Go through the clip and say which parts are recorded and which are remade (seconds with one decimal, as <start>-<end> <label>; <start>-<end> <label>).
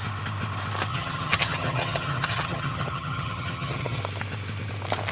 0.0-0.9 recorded; 0.9-4.0 remade; 4.0-5.1 recorded